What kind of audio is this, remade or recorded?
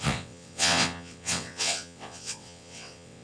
remade